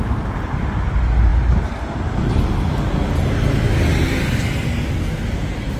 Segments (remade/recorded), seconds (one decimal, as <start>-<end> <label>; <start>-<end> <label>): 0.0-5.8 recorded